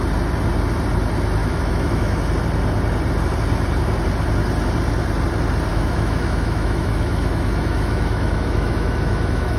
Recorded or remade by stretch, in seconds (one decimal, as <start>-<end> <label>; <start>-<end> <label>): 0.0-1.4 recorded; 1.4-2.2 remade; 2.2-5.7 recorded; 5.7-9.6 remade